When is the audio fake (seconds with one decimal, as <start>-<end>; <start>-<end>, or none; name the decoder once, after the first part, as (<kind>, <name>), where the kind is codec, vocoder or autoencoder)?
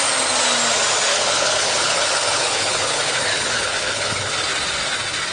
1.1-4.3 (codec, HILCodec)